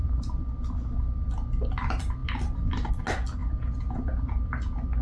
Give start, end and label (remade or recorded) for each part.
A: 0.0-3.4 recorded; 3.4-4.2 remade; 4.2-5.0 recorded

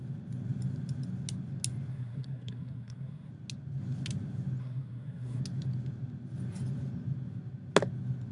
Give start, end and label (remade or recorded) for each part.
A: 0.0-1.9 recorded; 1.9-3.3 remade; 3.3-4.6 recorded; 4.6-5.4 remade; 5.4-8.3 recorded

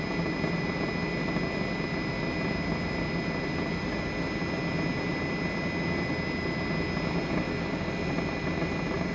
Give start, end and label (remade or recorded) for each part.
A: 0.0-9.1 recorded

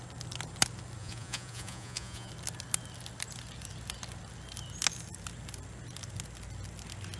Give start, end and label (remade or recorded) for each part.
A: 0.0-1.0 recorded; 1.0-2.3 remade; 2.3-7.2 recorded

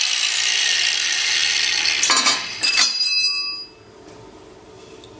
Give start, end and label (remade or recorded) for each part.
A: 0.0-5.2 recorded

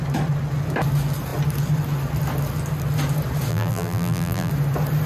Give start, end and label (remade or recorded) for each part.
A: 0.0-3.5 recorded; 3.5-4.5 remade; 4.5-5.1 recorded